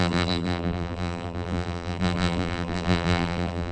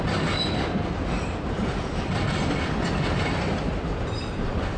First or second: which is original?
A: second